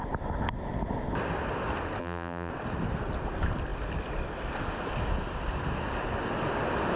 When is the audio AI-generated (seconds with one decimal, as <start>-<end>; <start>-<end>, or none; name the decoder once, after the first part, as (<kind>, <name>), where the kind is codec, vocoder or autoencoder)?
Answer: 2.0-2.5 (vocoder, BigVGAN v2)